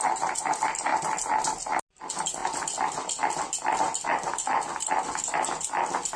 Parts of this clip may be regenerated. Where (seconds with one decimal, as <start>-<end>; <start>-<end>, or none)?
none